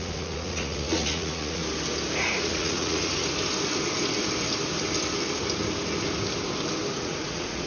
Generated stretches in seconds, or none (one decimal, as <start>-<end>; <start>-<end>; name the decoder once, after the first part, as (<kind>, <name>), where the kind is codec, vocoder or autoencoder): 0.0-1.6 (vocoder, Vocos); 2.2-3.2; 6.9-7.7